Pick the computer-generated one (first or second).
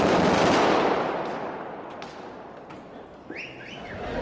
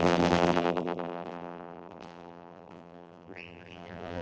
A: second